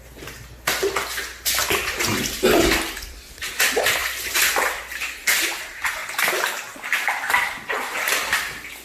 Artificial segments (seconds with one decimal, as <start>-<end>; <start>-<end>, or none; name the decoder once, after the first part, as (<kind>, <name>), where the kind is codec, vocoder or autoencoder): none